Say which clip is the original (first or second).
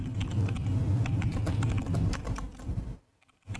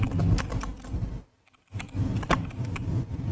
second